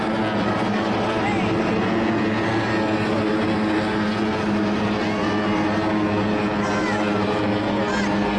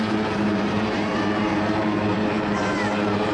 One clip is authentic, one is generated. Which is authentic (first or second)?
first